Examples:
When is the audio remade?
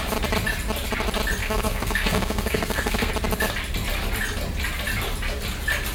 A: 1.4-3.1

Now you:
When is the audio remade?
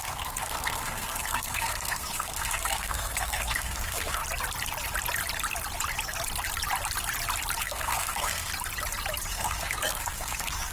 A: 0.0-4.2; 7.6-8.5; 9.3-10.7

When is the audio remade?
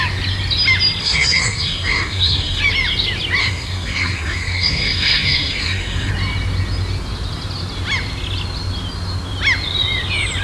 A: 1.0-2.6; 3.4-6.1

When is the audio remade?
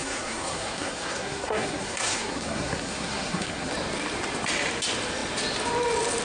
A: 0.0-3.7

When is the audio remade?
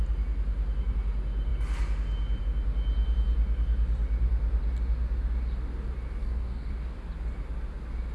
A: 6.2-6.7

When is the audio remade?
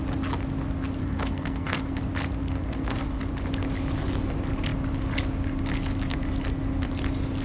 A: 1.0-2.0; 2.4-3.2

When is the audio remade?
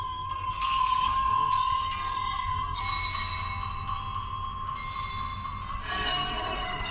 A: 0.0-2.8; 5.7-6.9